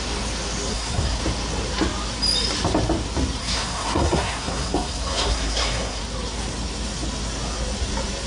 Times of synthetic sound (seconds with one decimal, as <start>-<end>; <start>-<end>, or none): 0.7-1.2; 3.4-6.0